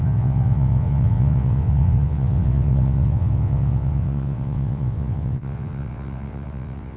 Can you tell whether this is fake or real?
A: fake